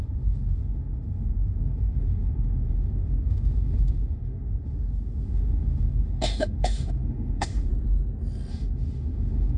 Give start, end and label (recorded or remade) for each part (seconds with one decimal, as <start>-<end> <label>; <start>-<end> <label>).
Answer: 0.0-7.7 remade; 7.7-8.5 recorded; 8.5-9.6 remade